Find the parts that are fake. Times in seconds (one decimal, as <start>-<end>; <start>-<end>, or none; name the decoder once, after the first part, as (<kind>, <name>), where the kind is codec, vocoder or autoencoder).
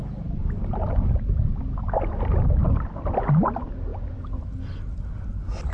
none